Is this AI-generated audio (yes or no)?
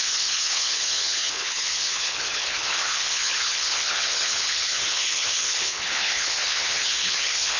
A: yes